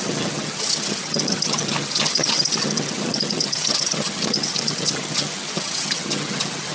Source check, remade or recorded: remade